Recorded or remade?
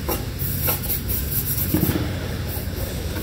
recorded